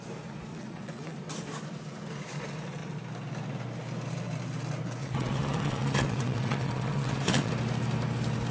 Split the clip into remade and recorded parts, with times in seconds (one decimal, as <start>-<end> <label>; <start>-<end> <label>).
0.0-0.5 recorded; 0.5-1.2 remade; 1.2-5.0 recorded; 5.0-7.5 remade; 7.5-8.5 recorded